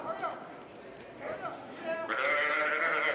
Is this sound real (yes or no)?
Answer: yes